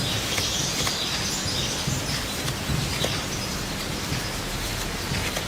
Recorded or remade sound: recorded